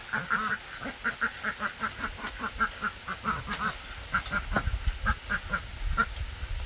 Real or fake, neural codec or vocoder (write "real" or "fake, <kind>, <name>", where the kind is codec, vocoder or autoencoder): real